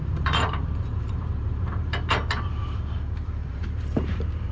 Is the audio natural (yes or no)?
no